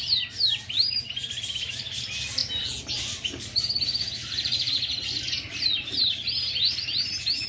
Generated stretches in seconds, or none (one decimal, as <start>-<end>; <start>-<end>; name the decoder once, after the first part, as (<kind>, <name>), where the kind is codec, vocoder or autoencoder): none